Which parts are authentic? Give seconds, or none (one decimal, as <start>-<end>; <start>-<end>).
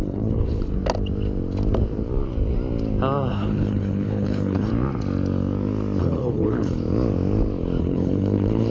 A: 0.7-3.3; 4.7-6.0; 6.8-7.8